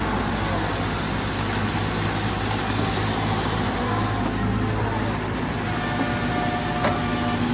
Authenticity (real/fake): real